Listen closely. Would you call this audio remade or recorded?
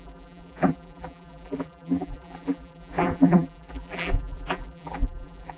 remade